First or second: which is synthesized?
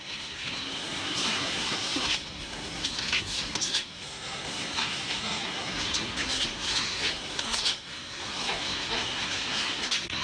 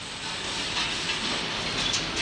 first